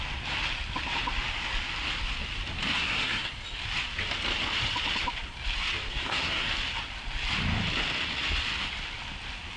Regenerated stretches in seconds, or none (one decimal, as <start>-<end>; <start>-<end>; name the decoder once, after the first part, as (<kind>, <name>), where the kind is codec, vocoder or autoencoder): 2.7-3.3 (codec, SNAC); 5.9-6.5